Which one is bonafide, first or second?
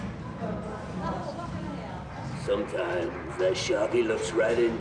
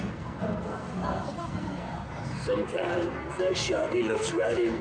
first